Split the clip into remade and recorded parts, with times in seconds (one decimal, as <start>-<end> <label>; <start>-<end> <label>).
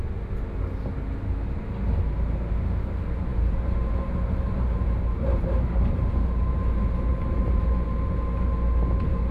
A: 0.0-3.3 recorded; 3.3-7.7 remade; 7.7-9.3 recorded